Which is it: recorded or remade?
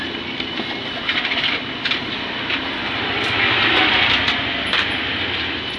recorded